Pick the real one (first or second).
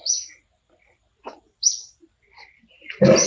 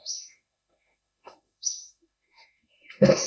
first